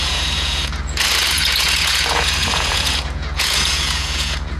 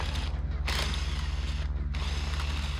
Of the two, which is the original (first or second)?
second